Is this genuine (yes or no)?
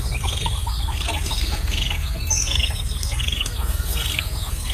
no